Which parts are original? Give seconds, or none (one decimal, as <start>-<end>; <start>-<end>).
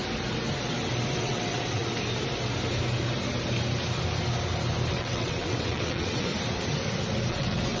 0.0-1.1; 1.8-4.9; 6.3-7.3